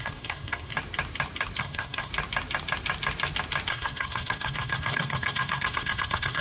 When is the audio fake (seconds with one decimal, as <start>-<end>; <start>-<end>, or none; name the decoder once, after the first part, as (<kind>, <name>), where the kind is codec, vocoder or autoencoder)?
0.0-0.7 (codec, SNAC); 1.6-2.1; 3.7-6.4